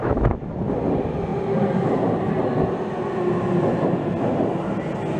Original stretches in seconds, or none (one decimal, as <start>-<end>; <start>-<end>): 0.5-5.2